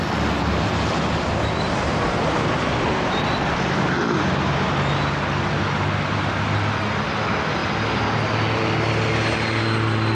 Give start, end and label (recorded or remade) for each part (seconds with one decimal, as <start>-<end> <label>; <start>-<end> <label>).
0.0-10.1 recorded